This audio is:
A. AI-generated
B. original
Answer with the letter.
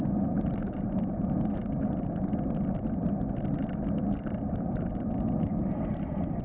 A